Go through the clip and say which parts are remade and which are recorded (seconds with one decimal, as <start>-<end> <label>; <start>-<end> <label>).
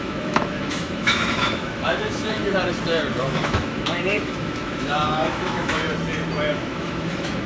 0.0-2.4 remade; 2.4-3.2 recorded; 3.2-5.9 remade; 5.9-6.5 recorded; 6.5-7.5 remade